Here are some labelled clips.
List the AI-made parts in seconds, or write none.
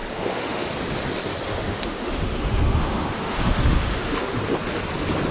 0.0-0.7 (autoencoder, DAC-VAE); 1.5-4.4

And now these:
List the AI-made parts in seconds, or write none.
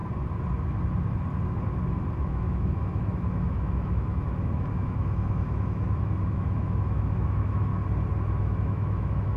2.2-7.7 (autoencoder, DAC-VAE); 8.4-9.4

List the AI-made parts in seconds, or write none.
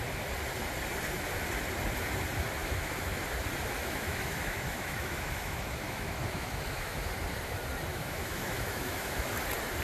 2.6-3.2 (autoencoder, DAC-VAE); 3.8-7.1; 7.9-9.3